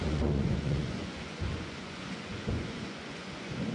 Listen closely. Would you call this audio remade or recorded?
remade